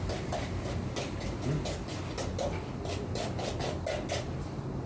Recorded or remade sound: recorded